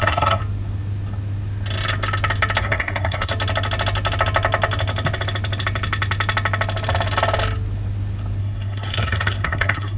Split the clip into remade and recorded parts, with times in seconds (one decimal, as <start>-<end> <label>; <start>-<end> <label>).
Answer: 0.0-0.4 remade; 0.4-2.6 recorded; 2.6-3.3 remade; 3.3-8.4 recorded; 8.4-10.0 remade